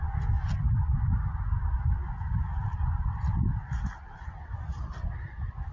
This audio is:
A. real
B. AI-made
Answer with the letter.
A